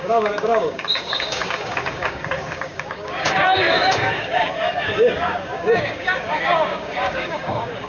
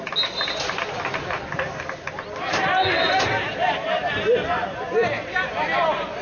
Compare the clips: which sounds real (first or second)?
second